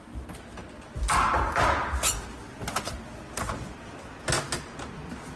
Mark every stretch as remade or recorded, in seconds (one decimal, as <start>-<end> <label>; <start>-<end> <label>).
0.0-5.4 recorded